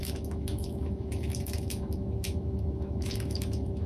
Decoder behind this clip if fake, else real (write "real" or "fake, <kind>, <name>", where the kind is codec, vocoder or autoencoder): fake, autoencoder, DAC-VAE